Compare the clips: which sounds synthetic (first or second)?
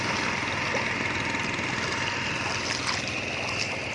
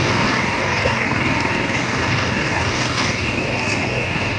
second